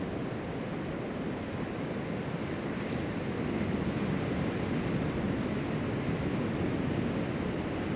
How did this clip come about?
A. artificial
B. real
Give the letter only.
B